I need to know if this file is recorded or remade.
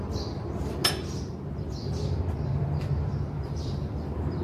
recorded